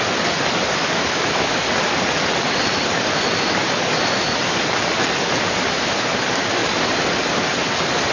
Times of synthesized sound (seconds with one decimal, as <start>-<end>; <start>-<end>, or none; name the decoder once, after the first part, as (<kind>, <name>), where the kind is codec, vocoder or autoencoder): 0.8-1.6 (autoencoder, DAC-VAE)